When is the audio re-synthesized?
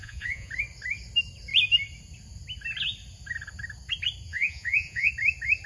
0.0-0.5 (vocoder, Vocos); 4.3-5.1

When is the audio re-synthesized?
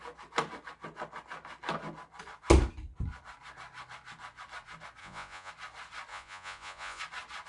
5.0-5.5 (vocoder, Vocos); 6.1-7.0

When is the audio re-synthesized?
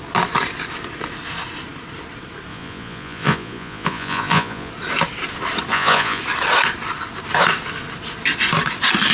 2.5-4.7 (vocoder, Vocos); 5.7-6.2